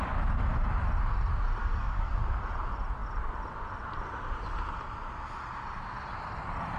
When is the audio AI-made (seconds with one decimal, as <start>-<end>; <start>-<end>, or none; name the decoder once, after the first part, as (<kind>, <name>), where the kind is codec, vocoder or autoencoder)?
1.6-2.2 (codec, SNAC)